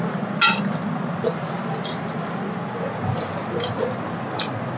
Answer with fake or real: real